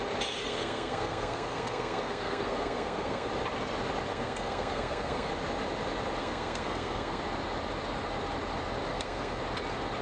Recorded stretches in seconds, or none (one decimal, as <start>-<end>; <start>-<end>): 0.0-0.4; 3.3-4.1; 5.3-6.2; 7.2-8.9; 9.4-10.0